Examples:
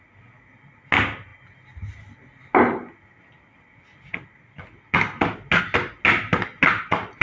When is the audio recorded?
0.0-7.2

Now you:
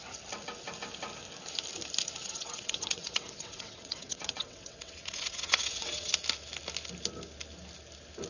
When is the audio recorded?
0.0-2.2; 6.1-8.3

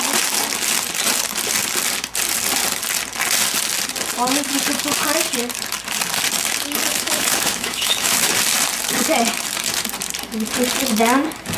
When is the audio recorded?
0.0-6.9; 8.3-11.6